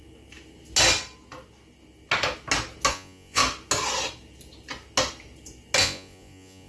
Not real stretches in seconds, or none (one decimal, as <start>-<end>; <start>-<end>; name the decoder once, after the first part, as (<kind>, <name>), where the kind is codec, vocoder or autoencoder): 2.9-3.4 (vocoder, Vocos); 5.8-6.7